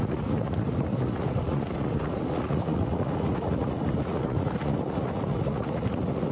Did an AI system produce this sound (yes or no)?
yes